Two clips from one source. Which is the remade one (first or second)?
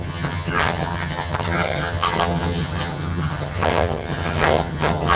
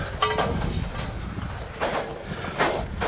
first